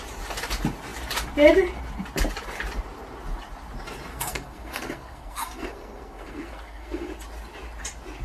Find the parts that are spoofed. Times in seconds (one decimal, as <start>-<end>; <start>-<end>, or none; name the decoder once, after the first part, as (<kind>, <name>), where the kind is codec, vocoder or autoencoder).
4.1-7.1 (codec, SNAC)